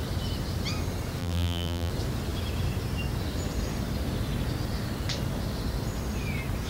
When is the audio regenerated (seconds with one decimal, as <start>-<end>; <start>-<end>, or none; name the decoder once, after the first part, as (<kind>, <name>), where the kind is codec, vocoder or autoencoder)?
1.2-1.9 (vocoder, BigVGAN v2)